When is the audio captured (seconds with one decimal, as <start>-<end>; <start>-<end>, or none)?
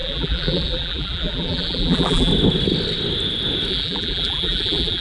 2.3-3.7